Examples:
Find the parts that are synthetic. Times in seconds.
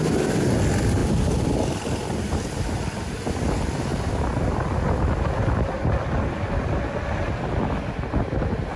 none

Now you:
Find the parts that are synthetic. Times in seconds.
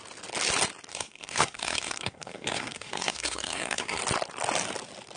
0.9-4.0 (codec, SNAC)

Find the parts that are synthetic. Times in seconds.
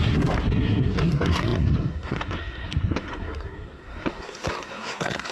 0.0-5.3 (codec, SNAC)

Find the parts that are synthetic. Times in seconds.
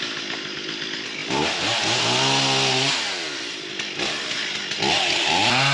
none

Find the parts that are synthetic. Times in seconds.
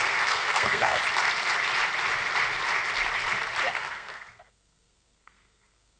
0.0-1.0 (codec, SNAC); 3.7-6.0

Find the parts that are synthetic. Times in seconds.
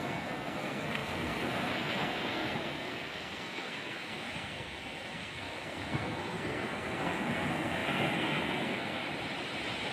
0.0-9.0 (codec, SNAC)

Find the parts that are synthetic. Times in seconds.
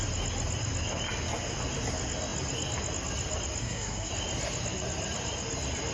3.6-4.1 (codec, SNAC)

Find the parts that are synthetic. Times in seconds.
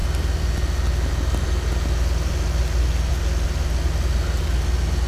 none